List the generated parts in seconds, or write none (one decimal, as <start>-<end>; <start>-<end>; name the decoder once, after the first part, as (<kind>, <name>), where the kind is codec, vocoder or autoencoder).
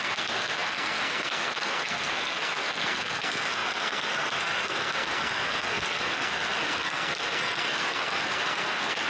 0.0-9.1 (codec, SNAC)